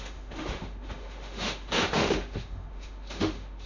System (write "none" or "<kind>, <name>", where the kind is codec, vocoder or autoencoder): autoencoder, DAC-VAE